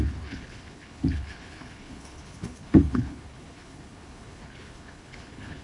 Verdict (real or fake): fake